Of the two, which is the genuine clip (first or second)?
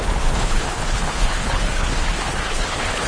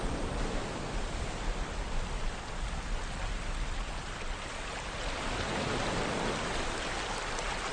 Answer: second